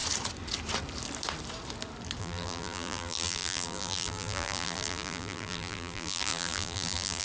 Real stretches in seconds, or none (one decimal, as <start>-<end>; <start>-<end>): 0.0-2.2